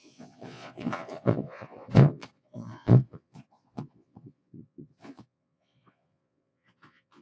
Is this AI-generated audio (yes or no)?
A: yes